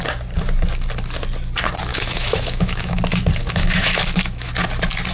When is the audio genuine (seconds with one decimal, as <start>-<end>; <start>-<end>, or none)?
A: 0.0-1.9; 3.0-3.4; 4.5-5.1